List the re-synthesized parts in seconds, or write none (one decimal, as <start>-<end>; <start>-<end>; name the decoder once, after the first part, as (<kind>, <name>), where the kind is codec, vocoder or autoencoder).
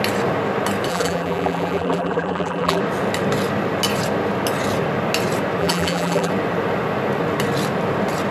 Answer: 0.9-2.8 (vocoder, BigVGAN v2); 5.6-6.3